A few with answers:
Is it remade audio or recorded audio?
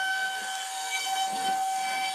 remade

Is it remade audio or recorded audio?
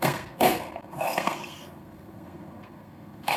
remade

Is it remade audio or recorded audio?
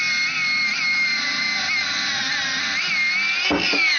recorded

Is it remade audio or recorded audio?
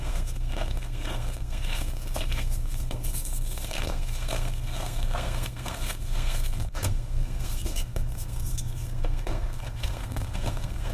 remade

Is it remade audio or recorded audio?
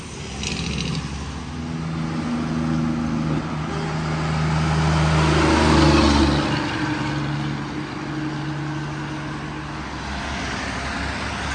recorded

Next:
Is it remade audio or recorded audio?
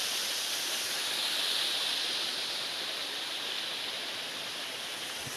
recorded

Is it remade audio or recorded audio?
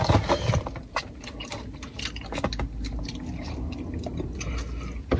recorded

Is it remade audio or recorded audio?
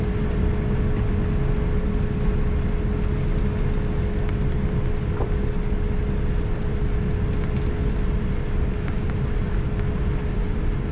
recorded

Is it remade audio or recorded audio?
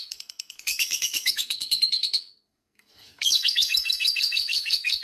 remade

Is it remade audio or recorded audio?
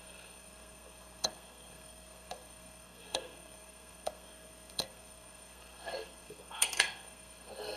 remade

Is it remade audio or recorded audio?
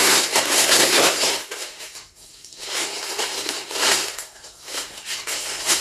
remade